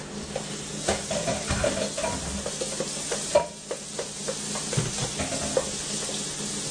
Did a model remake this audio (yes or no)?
no